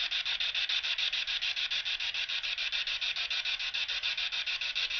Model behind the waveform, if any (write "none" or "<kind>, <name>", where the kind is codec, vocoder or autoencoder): none